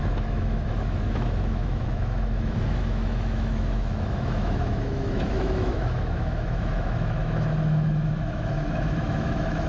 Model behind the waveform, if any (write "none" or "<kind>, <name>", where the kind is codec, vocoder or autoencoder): autoencoder, DAC-VAE